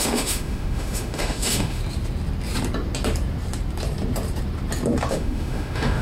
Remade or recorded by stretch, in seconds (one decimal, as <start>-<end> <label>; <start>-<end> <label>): 0.0-1.8 remade; 1.8-5.1 recorded; 5.1-6.0 remade